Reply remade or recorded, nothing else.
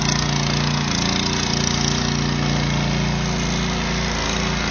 recorded